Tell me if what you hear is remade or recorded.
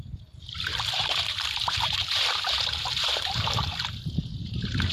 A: remade